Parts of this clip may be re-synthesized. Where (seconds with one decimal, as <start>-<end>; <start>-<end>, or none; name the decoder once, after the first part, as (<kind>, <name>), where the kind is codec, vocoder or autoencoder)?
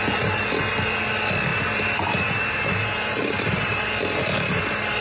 1.5-4.5 (vocoder, BigVGAN v2)